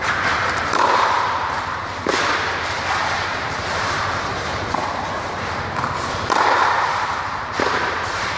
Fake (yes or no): yes